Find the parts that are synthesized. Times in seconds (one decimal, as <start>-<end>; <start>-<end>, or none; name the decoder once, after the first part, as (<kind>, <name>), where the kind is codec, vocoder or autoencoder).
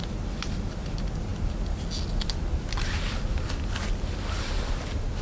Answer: none